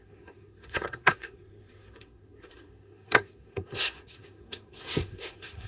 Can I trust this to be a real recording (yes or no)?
no